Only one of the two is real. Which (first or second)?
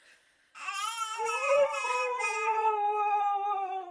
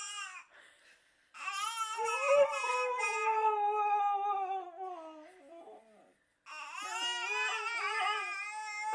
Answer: second